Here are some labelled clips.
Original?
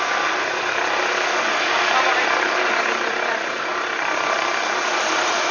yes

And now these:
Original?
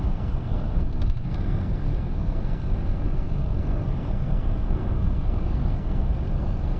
no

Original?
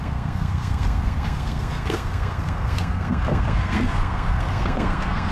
no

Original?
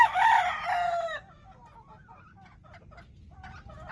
yes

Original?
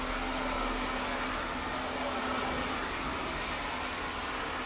yes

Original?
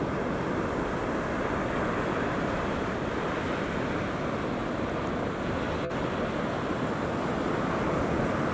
yes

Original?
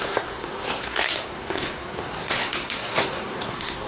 no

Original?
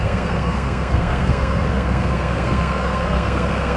no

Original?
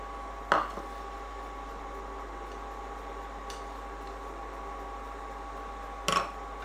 yes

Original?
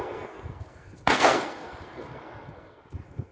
no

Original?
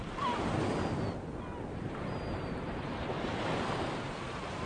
yes